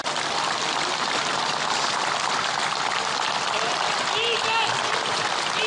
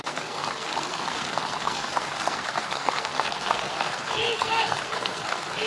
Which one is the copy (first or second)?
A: second